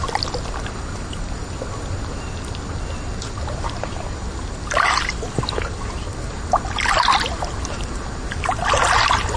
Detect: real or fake real